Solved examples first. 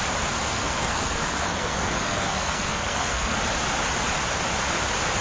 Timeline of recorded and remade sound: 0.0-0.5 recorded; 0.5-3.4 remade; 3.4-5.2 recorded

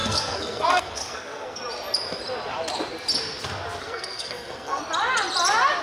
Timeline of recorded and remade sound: 0.0-1.6 remade; 1.6-3.8 recorded; 3.8-4.8 remade; 4.8-5.8 recorded

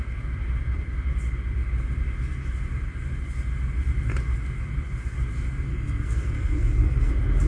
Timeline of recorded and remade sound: 0.0-5.7 recorded; 5.7-7.1 remade; 7.1-7.5 recorded